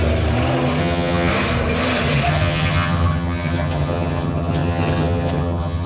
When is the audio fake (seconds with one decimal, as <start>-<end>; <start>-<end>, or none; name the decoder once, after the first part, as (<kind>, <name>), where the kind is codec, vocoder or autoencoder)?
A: 0.8-1.3 (vocoder, HiFi-GAN); 2.3-5.9